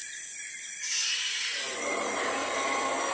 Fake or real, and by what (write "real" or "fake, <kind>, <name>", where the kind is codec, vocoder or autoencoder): real